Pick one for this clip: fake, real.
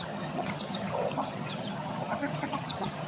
fake